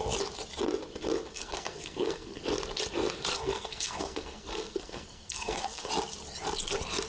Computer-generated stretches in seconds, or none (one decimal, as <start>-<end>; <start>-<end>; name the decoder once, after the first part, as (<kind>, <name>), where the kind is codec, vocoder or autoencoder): 1.3-2.4 (codec, SNAC); 3.3-5.9